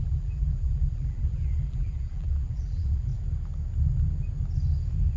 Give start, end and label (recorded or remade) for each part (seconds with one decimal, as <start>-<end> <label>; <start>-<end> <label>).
0.0-3.1 remade; 3.1-5.2 recorded